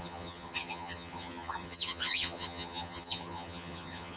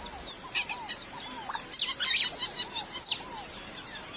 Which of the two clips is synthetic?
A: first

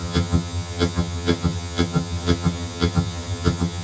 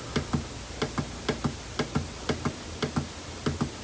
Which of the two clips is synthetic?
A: first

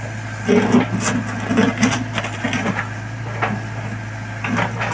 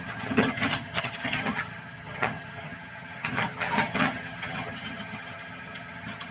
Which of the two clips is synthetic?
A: second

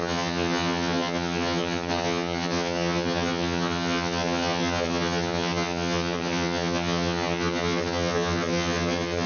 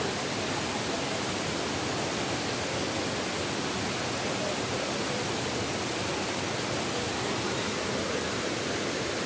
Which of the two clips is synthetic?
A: first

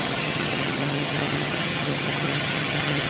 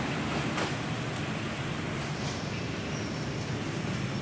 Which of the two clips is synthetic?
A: first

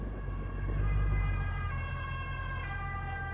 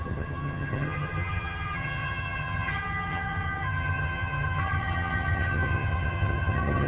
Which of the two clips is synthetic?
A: second